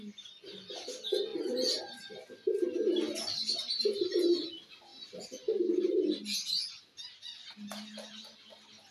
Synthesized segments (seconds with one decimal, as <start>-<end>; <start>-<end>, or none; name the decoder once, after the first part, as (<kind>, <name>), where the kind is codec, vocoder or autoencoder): none